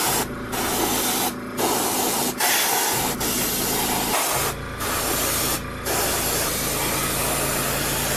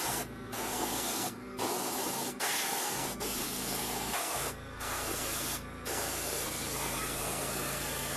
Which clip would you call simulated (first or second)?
second